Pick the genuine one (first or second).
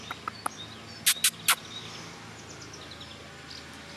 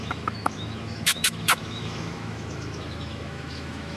first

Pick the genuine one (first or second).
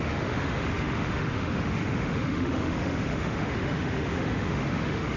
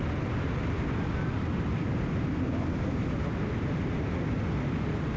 second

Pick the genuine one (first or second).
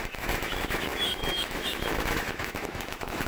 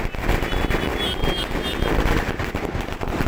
second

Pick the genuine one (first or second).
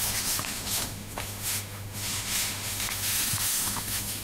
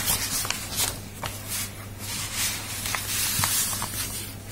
second